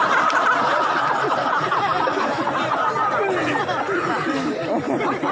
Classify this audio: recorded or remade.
recorded